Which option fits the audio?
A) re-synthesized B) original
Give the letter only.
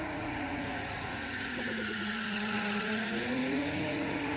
A